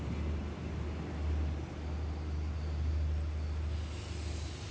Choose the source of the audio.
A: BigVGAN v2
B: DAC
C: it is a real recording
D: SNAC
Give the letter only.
C